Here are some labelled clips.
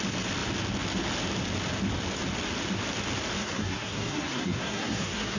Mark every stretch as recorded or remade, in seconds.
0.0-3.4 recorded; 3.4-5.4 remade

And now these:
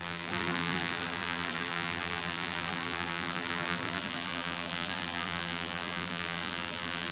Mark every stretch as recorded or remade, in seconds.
0.0-7.1 remade

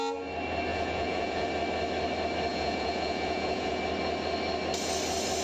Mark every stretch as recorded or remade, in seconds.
0.0-0.7 recorded; 0.7-1.5 remade; 1.5-2.5 recorded; 2.5-3.8 remade; 3.8-5.4 recorded

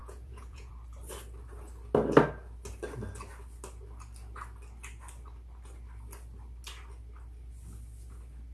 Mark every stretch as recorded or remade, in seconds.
0.0-0.7 remade; 0.7-8.5 recorded

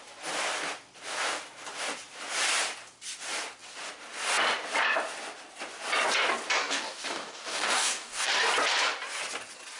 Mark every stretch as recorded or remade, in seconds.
0.0-6.6 recorded; 6.6-8.3 remade; 8.3-9.8 recorded

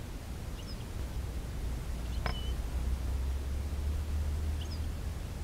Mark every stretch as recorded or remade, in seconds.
0.0-5.4 recorded

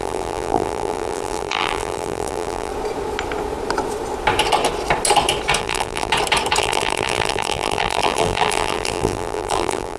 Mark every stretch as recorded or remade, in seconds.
0.0-2.7 remade; 2.7-5.6 recorded; 5.6-6.1 remade; 6.1-6.6 recorded; 6.6-10.0 remade

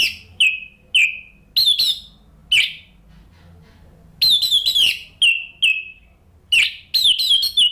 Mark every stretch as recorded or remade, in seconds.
0.0-4.6 recorded; 4.6-5.2 remade; 5.2-7.7 recorded